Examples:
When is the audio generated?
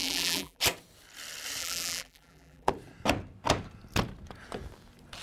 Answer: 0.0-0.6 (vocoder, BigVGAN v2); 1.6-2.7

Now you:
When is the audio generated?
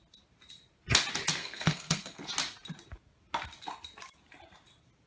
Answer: 1.4-2.2 (codec, SNAC)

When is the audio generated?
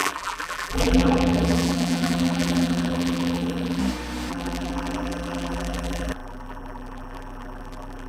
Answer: 0.0-3.8 (vocoder, BigVGAN v2); 4.3-8.1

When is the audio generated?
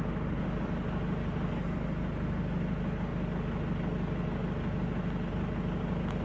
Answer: none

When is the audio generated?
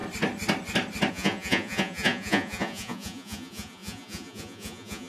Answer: 1.1-5.1 (vocoder, Vocos)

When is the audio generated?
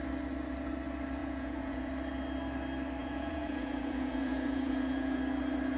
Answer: 1.2-1.9 (vocoder, Vocos); 3.0-5.2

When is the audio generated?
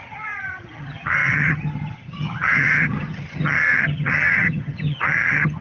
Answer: 0.0-5.6 (vocoder, HiFi-GAN)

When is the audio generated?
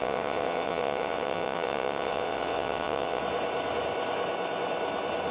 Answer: 0.0-3.2 (vocoder, WaveNeXt)